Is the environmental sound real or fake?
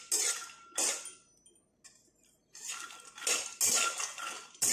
real